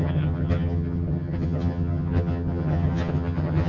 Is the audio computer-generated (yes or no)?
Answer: yes